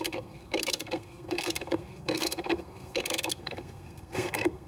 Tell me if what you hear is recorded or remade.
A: remade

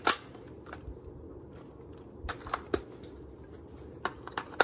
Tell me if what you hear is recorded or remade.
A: recorded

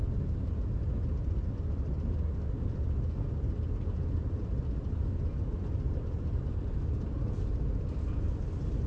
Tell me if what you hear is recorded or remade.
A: recorded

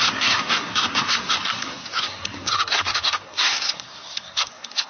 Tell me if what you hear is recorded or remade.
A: remade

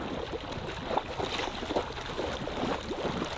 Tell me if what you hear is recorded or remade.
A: recorded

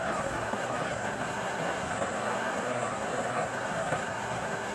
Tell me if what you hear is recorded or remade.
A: remade